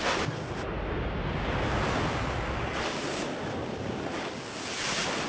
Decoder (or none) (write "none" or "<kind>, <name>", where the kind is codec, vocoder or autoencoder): none